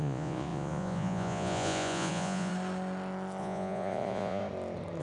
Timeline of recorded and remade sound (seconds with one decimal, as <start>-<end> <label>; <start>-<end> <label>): 0.0-2.5 remade; 2.5-3.4 recorded; 3.4-4.4 remade; 4.4-5.0 recorded